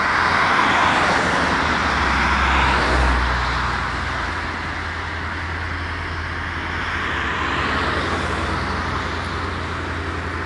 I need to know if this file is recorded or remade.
recorded